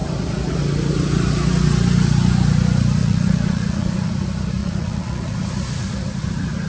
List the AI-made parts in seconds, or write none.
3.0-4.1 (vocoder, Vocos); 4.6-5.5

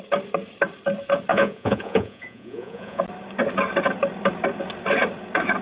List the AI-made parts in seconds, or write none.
1.3-3.0 (vocoder, Vocos)

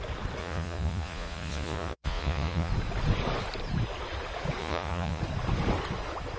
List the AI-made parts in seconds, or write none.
0.4-2.7 (vocoder, Vocos); 4.6-5.2

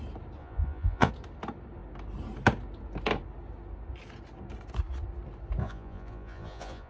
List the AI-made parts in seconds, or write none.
0.4-1.1 (vocoder, Vocos); 5.6-6.9

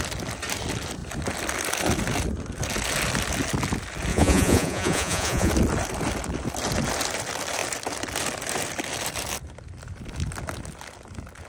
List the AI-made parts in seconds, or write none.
4.1-5.5 (vocoder, Vocos)

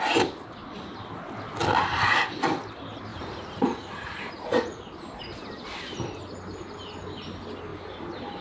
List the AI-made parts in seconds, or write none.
3.1-4.9 (vocoder, Vocos)

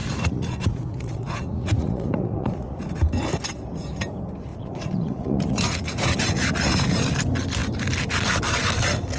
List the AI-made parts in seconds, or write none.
0.0-2.8 (vocoder, Vocos); 4.5-6.7